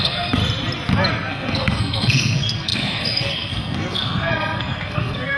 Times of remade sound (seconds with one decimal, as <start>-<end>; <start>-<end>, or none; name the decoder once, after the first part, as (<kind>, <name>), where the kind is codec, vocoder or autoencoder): 0.0-0.4 (codec, SNAC); 1.3-5.4